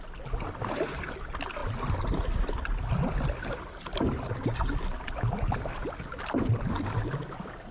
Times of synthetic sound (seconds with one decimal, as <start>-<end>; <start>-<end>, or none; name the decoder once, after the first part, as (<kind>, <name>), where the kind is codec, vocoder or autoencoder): none